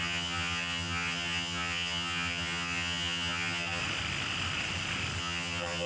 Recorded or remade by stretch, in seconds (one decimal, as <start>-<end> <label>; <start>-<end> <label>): 0.0-3.8 remade; 3.8-5.2 recorded; 5.2-5.9 remade